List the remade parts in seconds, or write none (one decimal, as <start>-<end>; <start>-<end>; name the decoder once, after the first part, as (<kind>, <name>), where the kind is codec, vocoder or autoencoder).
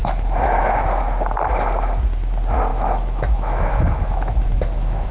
0.0-1.0 (autoencoder, DAC-VAE); 2.7-5.1